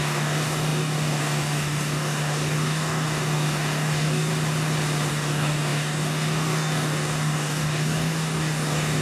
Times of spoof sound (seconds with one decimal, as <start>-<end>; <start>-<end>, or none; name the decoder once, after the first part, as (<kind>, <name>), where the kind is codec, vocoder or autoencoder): 0.0-4.3 (codec, DAC); 5.1-9.0